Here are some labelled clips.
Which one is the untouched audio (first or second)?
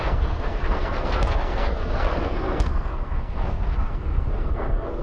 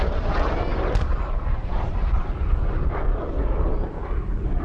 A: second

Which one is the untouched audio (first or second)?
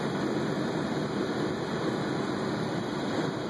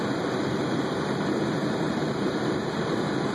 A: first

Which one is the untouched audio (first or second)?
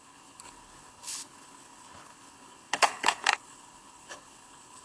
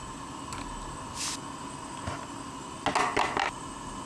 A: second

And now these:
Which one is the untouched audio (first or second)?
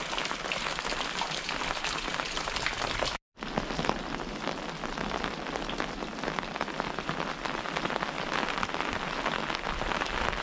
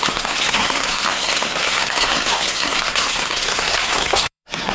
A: first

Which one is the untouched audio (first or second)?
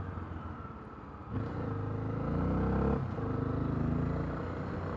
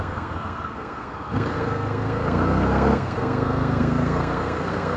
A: first